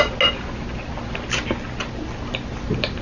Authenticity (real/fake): real